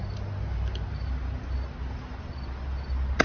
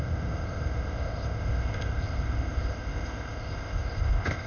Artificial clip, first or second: second